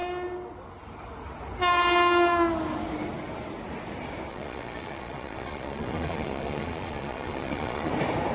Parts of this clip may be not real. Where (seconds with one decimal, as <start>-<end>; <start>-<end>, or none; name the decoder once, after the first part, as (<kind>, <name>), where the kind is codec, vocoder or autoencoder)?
4.3-7.9 (vocoder, Vocos)